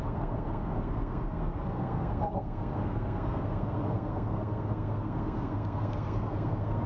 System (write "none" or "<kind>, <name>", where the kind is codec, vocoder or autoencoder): codec, SNAC